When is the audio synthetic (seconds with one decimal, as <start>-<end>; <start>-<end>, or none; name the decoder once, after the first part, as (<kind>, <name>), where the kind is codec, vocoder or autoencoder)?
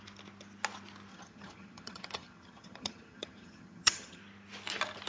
1.1-4.2 (vocoder, HiFi-GAN)